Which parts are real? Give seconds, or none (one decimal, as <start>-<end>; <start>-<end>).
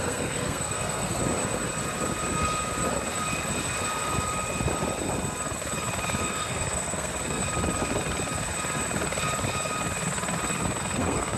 1.2-6.2; 7.4-10.8